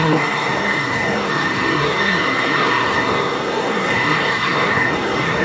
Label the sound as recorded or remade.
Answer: remade